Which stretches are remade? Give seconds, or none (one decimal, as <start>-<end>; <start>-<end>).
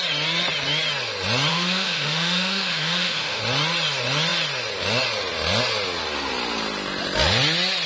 1.5-3.4